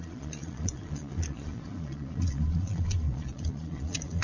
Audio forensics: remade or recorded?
remade